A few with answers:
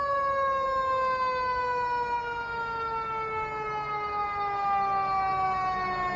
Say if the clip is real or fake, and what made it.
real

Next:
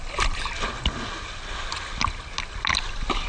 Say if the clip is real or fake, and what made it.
real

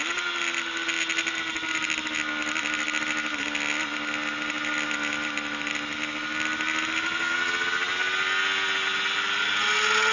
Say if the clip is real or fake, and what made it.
real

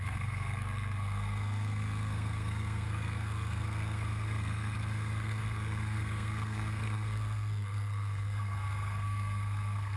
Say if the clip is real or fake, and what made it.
fake, codec, SNAC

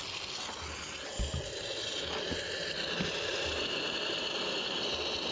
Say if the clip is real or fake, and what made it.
real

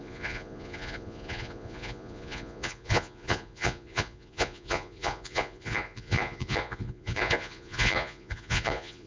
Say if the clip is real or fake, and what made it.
fake, vocoder, Vocos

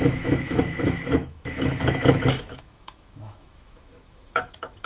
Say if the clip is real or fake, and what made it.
fake, autoencoder, DAC-VAE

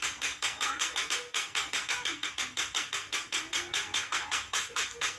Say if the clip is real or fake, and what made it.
fake, codec, SNAC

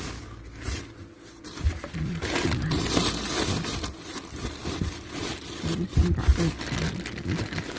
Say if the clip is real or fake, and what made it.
real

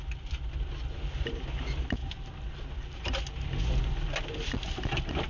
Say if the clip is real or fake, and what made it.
real